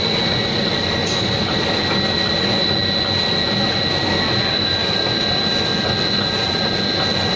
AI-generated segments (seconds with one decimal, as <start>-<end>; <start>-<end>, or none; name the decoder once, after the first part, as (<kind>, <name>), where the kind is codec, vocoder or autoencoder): 1.0-1.7 (vocoder, BigVGAN v2)